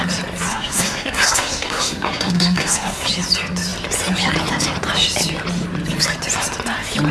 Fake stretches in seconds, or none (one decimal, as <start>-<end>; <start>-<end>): 0.5-3.1